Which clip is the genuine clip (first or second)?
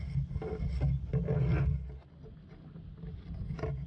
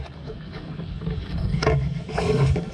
first